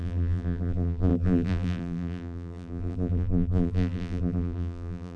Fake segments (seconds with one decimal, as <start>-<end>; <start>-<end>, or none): 0.0-5.2